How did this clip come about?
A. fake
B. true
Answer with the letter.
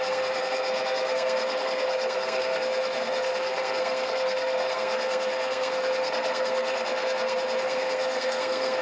A